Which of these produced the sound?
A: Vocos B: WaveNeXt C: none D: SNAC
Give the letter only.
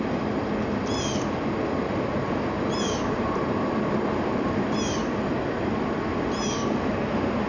C